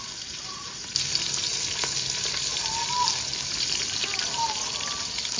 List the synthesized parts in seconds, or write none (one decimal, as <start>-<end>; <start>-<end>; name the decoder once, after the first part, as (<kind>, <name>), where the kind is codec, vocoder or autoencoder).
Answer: none